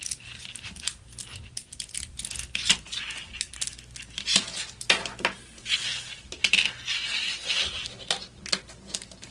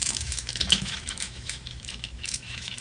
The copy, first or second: second